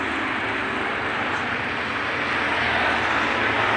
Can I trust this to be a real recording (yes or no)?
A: yes